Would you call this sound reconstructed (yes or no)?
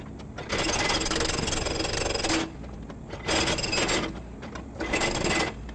no